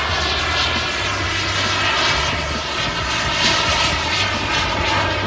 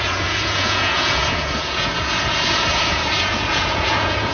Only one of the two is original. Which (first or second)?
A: first